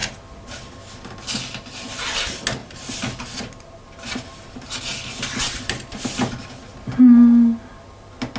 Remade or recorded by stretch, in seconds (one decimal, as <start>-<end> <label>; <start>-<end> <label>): 0.0-2.6 recorded; 2.6-3.9 remade; 3.9-8.4 recorded